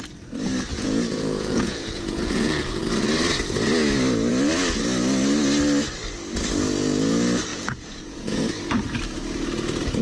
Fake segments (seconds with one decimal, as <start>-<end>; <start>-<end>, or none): 0.7-2.8; 7.5-8.4